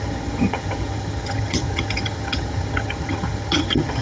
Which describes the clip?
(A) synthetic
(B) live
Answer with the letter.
A